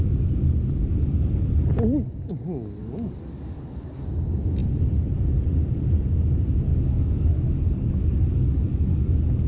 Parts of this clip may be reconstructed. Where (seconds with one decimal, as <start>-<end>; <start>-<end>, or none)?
2.8-4.0; 6.7-9.1